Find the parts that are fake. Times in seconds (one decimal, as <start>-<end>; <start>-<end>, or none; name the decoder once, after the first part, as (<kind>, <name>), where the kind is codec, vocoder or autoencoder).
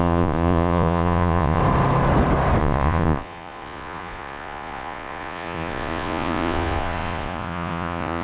0.0-1.6 (vocoder, Vocos); 2.6-8.2